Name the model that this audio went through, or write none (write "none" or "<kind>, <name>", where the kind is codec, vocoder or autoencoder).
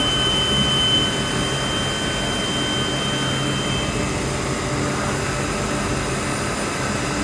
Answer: none